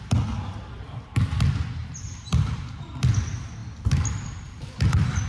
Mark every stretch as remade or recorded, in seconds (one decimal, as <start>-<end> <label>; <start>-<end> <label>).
0.0-1.8 recorded; 1.8-2.9 remade; 2.9-5.3 recorded